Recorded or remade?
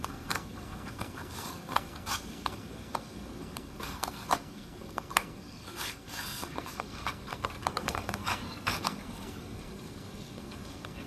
remade